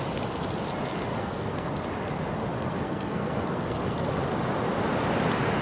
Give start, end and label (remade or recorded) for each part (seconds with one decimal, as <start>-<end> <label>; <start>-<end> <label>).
0.0-1.1 recorded; 1.1-1.7 remade; 1.7-2.5 recorded; 2.5-4.1 remade; 4.1-5.6 recorded